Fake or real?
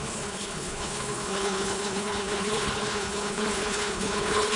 fake